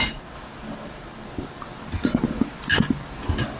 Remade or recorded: recorded